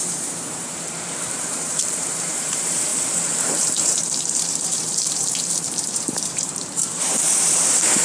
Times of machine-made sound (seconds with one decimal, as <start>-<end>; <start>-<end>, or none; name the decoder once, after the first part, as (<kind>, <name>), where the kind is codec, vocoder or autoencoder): 0.0-8.0 (vocoder, BigVGAN v2)